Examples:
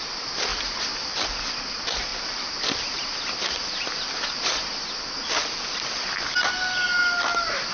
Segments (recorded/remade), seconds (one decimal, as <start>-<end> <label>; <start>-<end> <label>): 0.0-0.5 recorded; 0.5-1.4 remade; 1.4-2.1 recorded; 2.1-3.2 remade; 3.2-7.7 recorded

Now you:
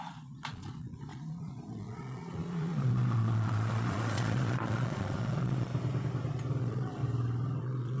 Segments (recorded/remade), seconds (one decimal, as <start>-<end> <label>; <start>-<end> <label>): 0.0-5.7 remade; 5.7-6.6 recorded; 6.6-7.0 remade; 7.0-7.6 recorded; 7.6-8.0 remade

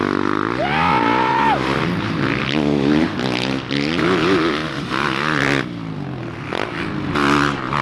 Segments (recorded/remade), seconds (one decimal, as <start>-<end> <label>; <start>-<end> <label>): 0.0-7.8 recorded

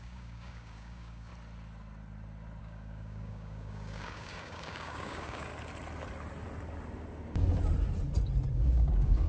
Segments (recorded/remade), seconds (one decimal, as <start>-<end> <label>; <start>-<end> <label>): 0.0-1.3 remade; 1.3-2.6 recorded; 2.6-5.5 remade; 5.5-8.5 recorded; 8.5-9.3 remade